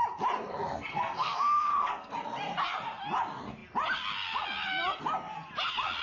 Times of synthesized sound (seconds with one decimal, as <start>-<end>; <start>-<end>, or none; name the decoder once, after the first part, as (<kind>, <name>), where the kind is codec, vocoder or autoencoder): 0.9-2.1 (codec, SNAC)